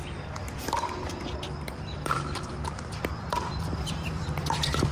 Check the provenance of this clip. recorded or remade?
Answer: remade